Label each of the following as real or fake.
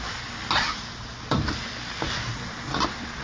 real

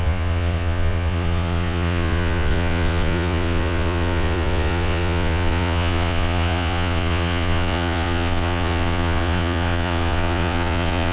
fake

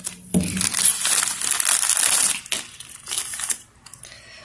real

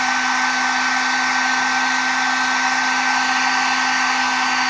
real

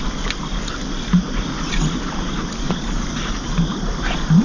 real